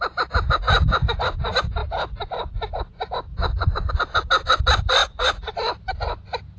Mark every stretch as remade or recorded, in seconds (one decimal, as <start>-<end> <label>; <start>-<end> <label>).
0.0-3.3 recorded; 3.3-3.9 remade; 3.9-5.0 recorded; 5.0-5.5 remade; 5.5-6.6 recorded